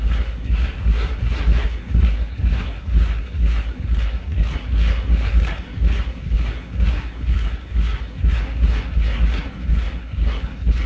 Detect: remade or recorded remade